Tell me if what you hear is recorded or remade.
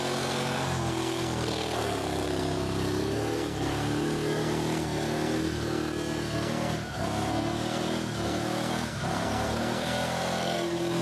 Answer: remade